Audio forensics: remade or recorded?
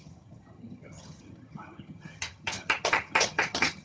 remade